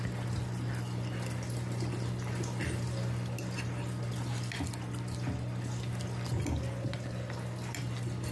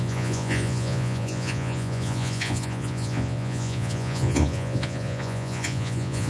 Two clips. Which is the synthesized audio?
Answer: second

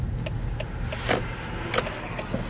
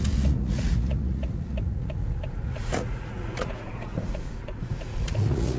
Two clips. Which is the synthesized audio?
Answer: second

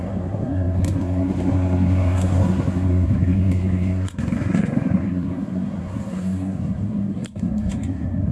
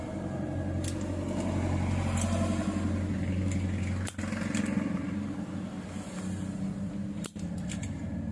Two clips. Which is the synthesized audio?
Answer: first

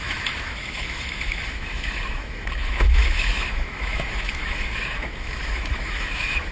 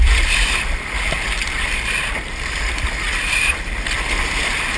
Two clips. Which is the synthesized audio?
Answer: first